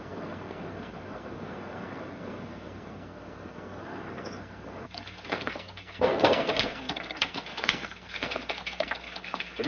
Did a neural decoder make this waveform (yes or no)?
yes